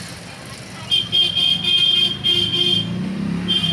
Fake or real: real